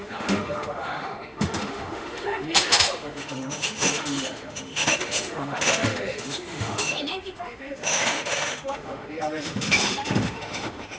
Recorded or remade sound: remade